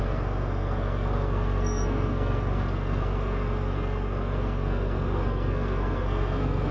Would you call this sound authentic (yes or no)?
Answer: no